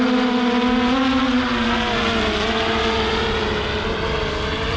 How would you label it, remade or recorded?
recorded